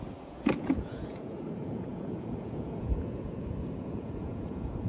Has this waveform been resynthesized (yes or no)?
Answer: yes